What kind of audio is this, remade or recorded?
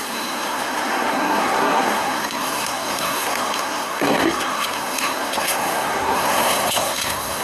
remade